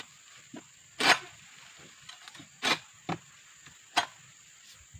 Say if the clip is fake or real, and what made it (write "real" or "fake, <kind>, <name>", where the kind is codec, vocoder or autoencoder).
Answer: real